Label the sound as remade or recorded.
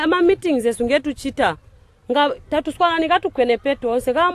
recorded